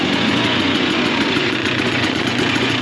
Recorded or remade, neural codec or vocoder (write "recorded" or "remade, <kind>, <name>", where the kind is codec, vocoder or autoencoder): remade, vocoder, Vocos